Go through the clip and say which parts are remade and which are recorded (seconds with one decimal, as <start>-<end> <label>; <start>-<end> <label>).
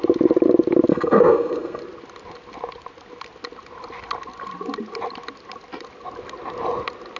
0.0-0.9 recorded; 0.9-1.8 remade; 1.8-7.2 recorded